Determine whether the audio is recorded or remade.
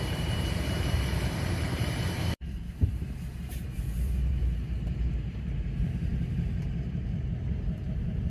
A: remade